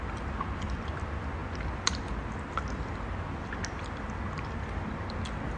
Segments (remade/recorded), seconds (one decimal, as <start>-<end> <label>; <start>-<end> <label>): 0.0-5.6 recorded

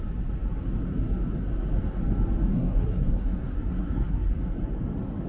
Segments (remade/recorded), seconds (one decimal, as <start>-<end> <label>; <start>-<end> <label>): 0.0-2.5 recorded; 2.5-4.3 remade; 4.3-5.3 recorded

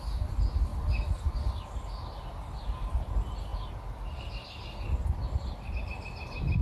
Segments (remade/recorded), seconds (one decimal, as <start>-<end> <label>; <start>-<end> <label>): 0.0-6.6 recorded